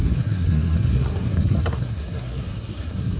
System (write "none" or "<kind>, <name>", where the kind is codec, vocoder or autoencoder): codec, SNAC